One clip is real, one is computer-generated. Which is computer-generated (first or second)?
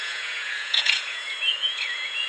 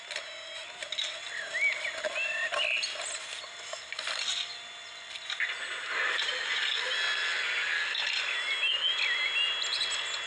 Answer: first